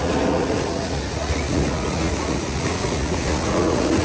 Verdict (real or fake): fake